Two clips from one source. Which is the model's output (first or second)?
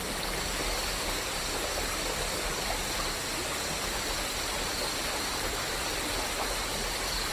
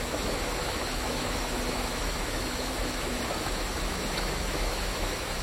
second